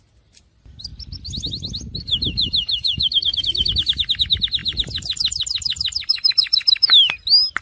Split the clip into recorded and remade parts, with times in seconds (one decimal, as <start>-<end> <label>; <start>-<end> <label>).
0.0-2.4 recorded; 2.4-3.4 remade; 3.4-4.6 recorded; 4.6-6.3 remade; 6.3-7.6 recorded